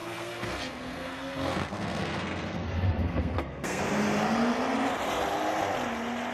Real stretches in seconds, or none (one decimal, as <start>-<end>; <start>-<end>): 3.8-6.3